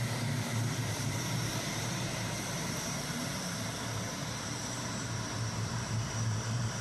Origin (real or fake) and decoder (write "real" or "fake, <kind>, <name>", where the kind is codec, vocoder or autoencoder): fake, vocoder, BigVGAN v2